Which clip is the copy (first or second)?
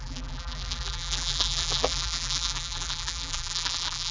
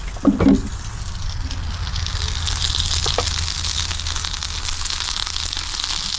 first